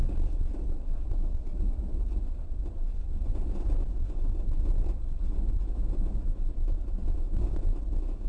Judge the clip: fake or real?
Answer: real